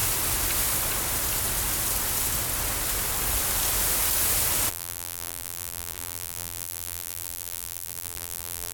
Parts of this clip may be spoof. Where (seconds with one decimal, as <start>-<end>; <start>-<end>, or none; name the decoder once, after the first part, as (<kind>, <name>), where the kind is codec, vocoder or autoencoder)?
4.7-8.7 (vocoder, BigVGAN v2)